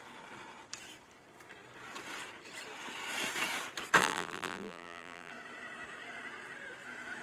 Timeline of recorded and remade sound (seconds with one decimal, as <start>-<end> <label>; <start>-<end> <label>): 0.0-4.0 recorded; 4.0-5.3 remade; 5.3-7.2 recorded